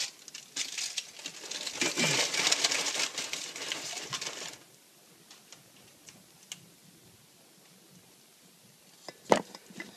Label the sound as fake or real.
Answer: real